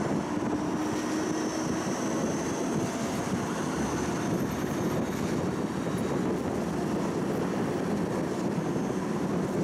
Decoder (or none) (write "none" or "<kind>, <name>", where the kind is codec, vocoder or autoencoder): none